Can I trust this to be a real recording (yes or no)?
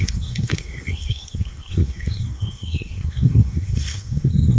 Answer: no